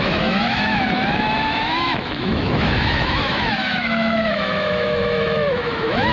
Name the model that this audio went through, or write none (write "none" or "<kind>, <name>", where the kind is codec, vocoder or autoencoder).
autoencoder, DAC-VAE